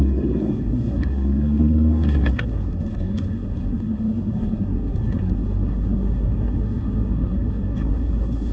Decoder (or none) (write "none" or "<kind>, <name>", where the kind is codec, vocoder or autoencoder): codec, SNAC